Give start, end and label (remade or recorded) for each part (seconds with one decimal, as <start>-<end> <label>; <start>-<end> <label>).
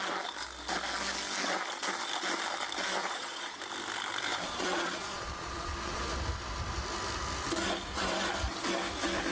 0.0-3.0 recorded; 3.0-3.6 remade; 3.6-4.3 recorded; 4.3-6.0 remade; 6.0-9.3 recorded